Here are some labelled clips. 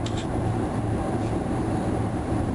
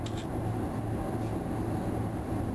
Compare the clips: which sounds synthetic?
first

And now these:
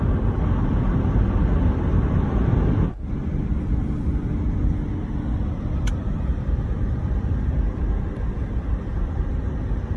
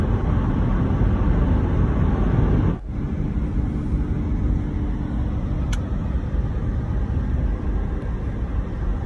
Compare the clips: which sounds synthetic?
first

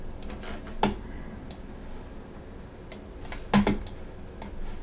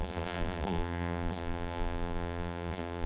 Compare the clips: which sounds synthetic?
second